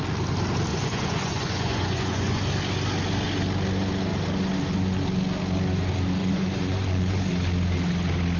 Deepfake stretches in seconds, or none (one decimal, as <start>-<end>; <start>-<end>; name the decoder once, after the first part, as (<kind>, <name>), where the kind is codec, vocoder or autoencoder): 0.7-2.4 (vocoder, Vocos); 6.2-7.3